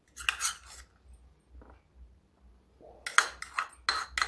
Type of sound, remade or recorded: recorded